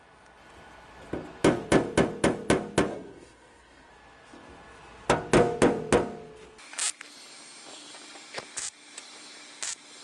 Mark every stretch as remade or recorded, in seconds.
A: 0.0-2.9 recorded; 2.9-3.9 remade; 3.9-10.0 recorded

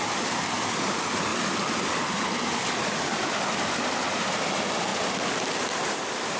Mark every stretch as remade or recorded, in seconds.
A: 0.0-6.4 recorded